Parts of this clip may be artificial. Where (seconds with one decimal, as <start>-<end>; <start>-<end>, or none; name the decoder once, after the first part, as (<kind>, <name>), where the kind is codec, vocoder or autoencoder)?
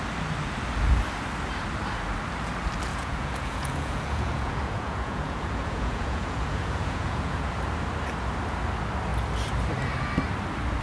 2.9-7.5 (vocoder, Vocos)